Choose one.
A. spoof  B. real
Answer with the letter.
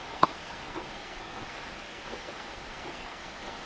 A